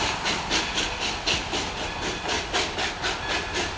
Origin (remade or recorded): recorded